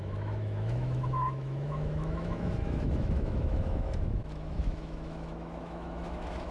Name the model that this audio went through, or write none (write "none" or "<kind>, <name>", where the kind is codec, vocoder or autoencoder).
autoencoder, DAC-VAE